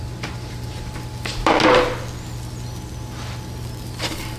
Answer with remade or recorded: recorded